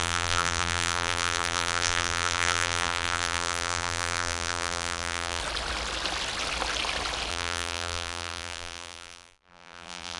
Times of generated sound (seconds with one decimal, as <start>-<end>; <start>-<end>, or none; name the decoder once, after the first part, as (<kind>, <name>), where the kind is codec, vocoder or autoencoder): 0.0-5.4 (vocoder, BigVGAN v2); 7.3-10.2